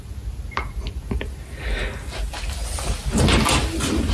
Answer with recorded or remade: recorded